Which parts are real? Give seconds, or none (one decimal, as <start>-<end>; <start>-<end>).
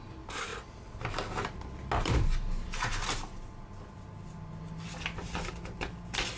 0.0-6.4